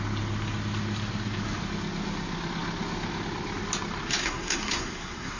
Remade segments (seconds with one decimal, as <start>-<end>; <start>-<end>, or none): 4.2-5.4